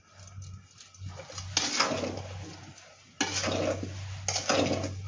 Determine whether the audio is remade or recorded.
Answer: recorded